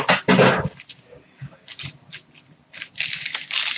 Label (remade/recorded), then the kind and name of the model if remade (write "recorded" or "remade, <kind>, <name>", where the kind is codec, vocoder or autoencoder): recorded